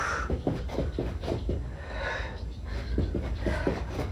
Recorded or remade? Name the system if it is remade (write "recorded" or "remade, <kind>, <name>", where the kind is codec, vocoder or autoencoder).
remade, codec, DAC